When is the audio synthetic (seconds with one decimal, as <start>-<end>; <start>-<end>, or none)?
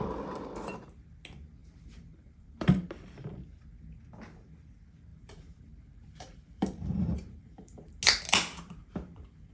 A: 1.6-3.4; 5.1-7.9; 8.8-9.5